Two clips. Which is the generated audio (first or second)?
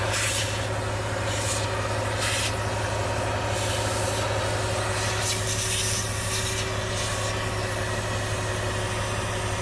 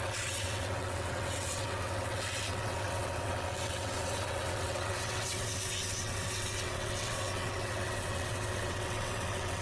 second